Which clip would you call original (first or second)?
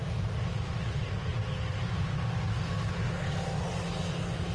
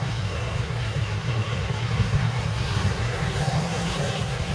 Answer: first